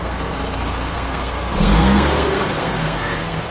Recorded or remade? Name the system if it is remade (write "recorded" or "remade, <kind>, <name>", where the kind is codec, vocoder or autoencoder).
remade, codec, SNAC